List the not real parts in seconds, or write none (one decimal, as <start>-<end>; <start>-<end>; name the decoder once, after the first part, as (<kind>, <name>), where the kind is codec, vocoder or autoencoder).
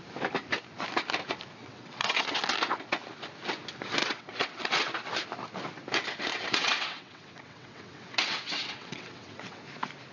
1.6-2.4 (vocoder, WaveNeXt); 4.0-4.7; 6.3-9.6